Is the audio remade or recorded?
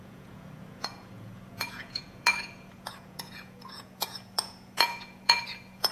remade